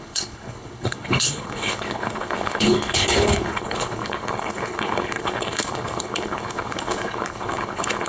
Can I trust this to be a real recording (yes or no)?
no